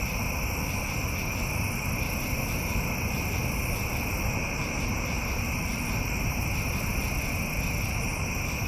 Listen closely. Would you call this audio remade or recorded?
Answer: recorded